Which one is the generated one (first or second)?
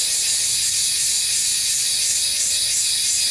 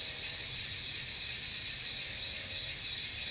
second